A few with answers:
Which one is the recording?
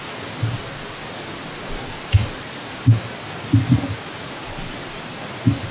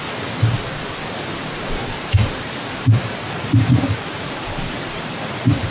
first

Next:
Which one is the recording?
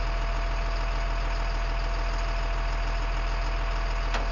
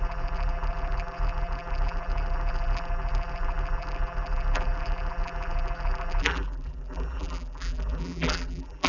first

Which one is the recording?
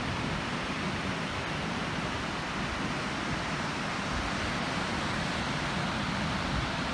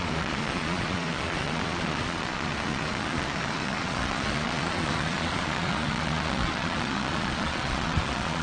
first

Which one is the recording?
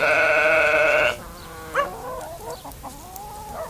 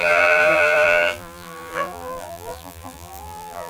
first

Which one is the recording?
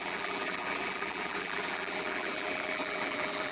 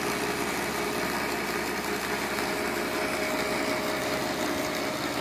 second